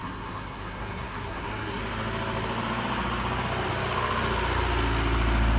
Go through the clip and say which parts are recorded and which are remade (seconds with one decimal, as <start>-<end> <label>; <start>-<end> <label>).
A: 0.0-1.8 remade; 1.8-5.6 recorded